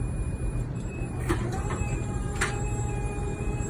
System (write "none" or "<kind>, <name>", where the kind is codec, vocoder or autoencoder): vocoder, BigVGAN v2